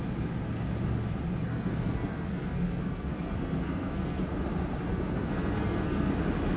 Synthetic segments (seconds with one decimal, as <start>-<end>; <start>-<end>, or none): 1.5-4.2; 4.9-6.1